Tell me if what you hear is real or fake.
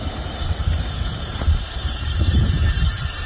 fake